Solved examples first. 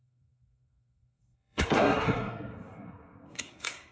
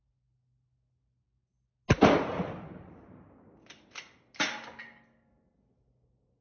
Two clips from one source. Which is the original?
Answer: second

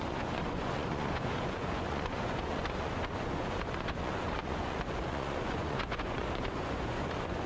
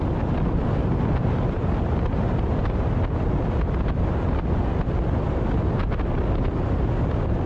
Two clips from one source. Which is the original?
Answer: second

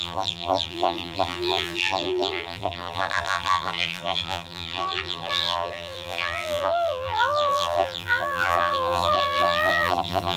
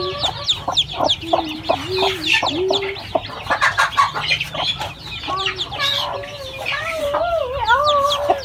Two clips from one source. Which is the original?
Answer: second